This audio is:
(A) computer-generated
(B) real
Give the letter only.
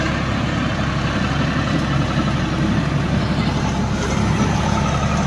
B